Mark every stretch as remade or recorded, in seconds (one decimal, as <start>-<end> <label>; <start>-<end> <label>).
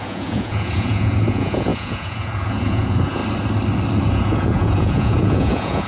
0.0-3.2 remade; 3.2-4.1 recorded; 4.1-5.9 remade